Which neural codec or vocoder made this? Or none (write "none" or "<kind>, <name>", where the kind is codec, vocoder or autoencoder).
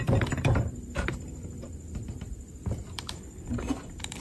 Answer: vocoder, BigVGAN v2